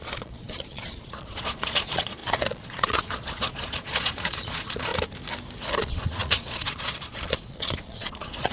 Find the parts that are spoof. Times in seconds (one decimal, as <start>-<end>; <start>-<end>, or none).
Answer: 0.0-4.9; 5.8-8.5